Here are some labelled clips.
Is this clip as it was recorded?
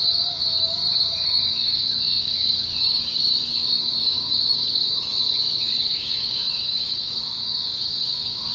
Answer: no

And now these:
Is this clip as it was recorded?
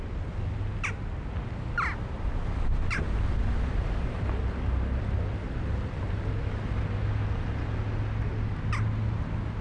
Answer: yes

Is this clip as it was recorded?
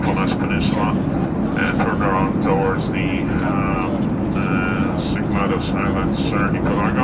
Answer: yes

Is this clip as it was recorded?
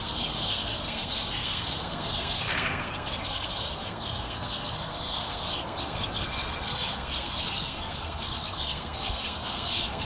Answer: no